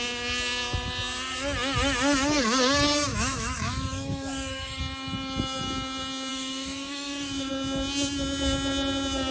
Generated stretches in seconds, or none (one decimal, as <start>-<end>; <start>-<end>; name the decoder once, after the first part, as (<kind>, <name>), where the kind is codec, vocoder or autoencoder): 3.1-4.8 (autoencoder, DAC-VAE); 6.3-7.5